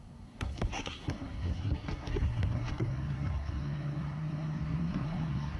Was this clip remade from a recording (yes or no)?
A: yes